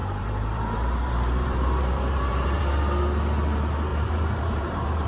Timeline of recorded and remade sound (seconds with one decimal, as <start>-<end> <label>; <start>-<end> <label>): 0.0-2.6 remade; 2.6-3.9 recorded; 3.9-5.1 remade